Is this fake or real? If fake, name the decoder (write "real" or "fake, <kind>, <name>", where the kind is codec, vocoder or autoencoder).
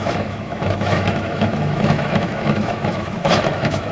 fake, autoencoder, DAC-VAE